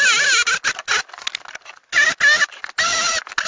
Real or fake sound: real